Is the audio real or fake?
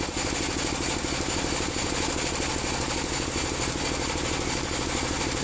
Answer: real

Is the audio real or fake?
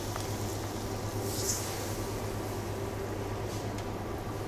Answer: real